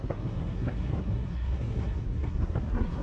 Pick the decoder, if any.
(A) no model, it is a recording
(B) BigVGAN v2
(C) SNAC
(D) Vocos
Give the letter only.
C